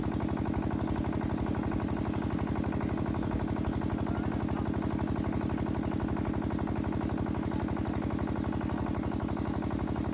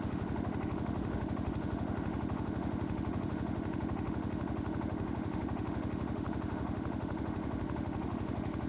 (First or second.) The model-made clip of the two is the second